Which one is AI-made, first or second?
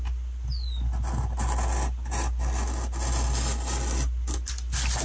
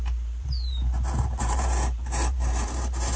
second